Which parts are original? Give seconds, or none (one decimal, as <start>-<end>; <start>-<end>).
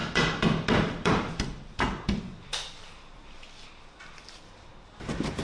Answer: 2.1-2.5; 3.2-5.4